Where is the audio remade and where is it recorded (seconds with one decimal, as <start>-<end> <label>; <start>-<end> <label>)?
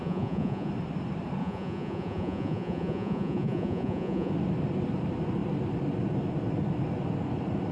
0.0-0.7 remade; 0.7-1.4 recorded; 1.4-4.3 remade; 4.3-7.7 recorded